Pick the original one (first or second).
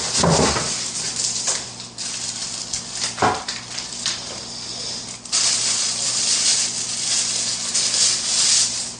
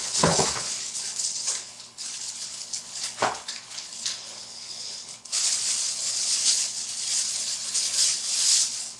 first